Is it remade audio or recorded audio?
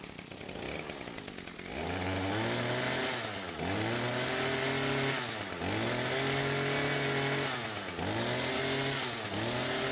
recorded